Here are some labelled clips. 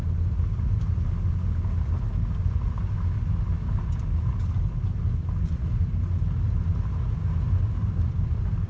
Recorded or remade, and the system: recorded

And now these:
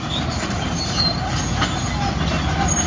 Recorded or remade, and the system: recorded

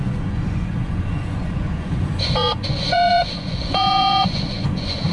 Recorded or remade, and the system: remade, vocoder, Vocos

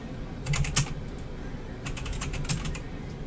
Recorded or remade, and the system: recorded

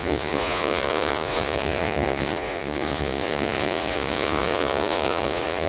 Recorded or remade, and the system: remade, vocoder, Vocos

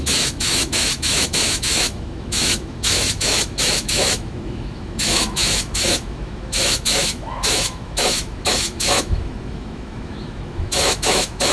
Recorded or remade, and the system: remade, autoencoder, DAC-VAE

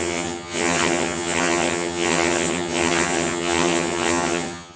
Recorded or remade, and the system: remade, vocoder, HiFi-GAN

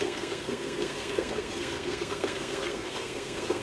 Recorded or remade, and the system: remade, codec, SNAC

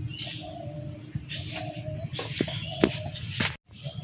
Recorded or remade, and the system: recorded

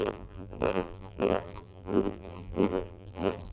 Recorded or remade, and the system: remade, vocoder, BigVGAN v2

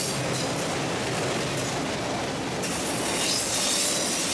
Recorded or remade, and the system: recorded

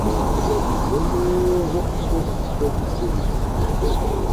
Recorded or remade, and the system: remade, autoencoder, DAC-VAE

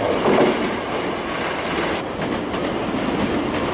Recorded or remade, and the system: recorded